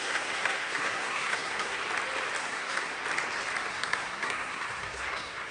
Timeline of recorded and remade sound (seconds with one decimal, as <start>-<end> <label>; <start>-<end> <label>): 0.0-1.8 remade; 1.8-2.4 recorded; 2.4-3.0 remade; 3.0-3.7 recorded; 3.7-5.5 remade